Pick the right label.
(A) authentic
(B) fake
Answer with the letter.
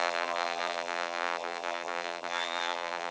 B